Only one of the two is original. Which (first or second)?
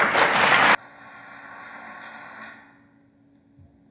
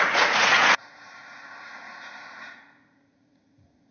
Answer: first